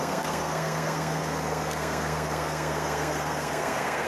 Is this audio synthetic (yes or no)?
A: yes